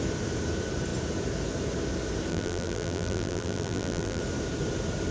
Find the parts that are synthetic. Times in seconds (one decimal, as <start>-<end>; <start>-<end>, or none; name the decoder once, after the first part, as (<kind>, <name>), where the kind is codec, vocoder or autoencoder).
2.3-4.2 (vocoder, BigVGAN v2)